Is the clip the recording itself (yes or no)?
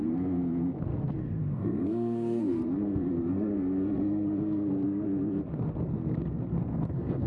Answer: no